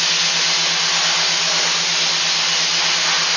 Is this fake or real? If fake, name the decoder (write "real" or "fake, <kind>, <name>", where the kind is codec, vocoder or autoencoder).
real